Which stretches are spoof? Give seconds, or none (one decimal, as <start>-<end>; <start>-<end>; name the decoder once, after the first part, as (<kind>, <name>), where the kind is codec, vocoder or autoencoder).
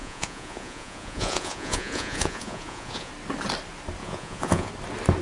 0.0-3.1 (vocoder, Vocos); 4.0-4.7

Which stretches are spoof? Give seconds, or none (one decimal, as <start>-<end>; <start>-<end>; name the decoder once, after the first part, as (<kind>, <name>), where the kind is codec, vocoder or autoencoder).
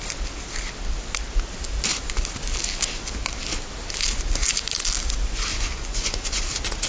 5.5-6.4 (vocoder, Vocos)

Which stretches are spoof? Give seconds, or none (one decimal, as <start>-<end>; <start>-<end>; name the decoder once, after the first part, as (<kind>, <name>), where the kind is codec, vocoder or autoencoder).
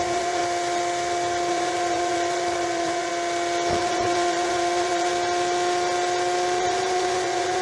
0.0-0.4 (vocoder, Vocos); 1.5-3.1; 3.8-5.1; 6.6-7.6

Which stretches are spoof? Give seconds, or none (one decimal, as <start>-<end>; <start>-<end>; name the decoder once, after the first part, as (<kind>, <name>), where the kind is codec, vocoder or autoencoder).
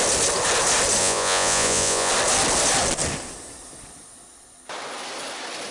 1.0-2.1 (vocoder, Vocos)